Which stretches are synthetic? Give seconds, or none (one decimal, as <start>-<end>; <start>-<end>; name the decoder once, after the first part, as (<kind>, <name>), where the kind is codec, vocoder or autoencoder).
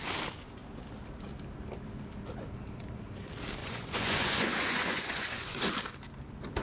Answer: 3.6-5.6 (vocoder, Vocos)